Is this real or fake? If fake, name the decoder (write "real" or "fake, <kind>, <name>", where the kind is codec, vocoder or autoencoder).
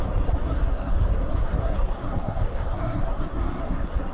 fake, codec, SNAC